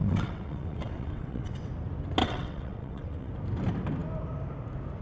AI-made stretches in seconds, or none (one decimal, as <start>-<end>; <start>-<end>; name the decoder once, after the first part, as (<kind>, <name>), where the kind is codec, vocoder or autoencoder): 0.0-1.7 (vocoder, WaveNeXt); 2.2-3.3